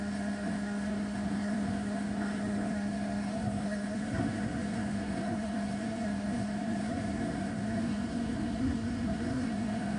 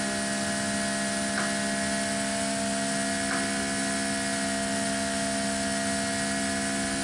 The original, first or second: second